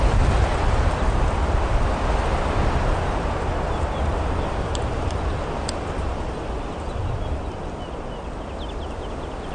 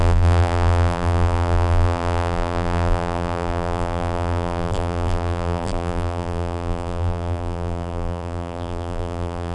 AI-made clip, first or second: second